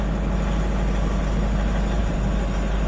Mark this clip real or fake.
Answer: real